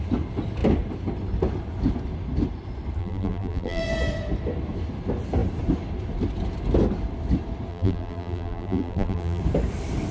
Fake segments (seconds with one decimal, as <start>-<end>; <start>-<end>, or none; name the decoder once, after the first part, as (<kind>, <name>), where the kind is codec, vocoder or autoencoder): 3.0-3.8 (vocoder, BigVGAN v2); 7.7-9.4